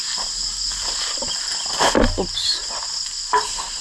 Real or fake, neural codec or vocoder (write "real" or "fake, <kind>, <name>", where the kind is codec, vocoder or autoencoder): real